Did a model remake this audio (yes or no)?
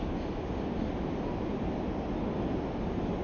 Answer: no